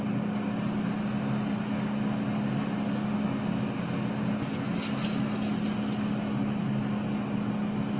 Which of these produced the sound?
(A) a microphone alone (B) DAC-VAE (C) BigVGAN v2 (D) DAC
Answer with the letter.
A